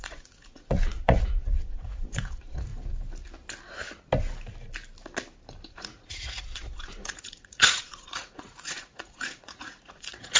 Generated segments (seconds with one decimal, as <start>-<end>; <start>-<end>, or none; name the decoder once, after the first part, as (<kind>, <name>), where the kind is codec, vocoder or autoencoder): 0.0-2.7 (vocoder, Vocos); 5.7-10.4